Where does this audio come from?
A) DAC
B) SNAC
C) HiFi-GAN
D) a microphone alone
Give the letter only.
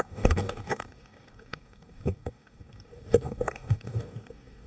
A